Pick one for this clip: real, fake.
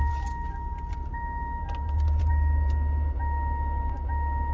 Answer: real